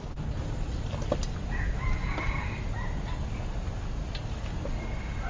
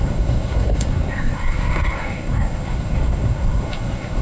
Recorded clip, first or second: first